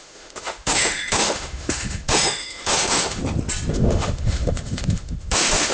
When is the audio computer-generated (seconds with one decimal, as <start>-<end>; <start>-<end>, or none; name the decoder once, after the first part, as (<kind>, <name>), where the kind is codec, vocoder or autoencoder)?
0.0-3.2 (autoencoder, DAC-VAE); 3.7-5.7